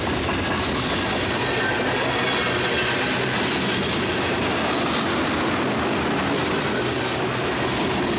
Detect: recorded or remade recorded